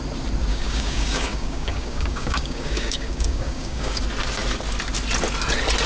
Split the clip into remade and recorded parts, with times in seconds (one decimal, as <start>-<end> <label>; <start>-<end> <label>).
0.0-0.5 recorded; 0.5-4.0 remade; 4.0-5.9 recorded